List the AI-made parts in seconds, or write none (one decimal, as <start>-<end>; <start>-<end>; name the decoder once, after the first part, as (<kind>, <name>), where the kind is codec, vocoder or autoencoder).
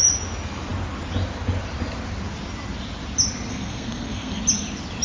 3.5-4.4 (codec, SNAC)